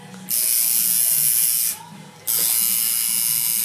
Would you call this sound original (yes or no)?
yes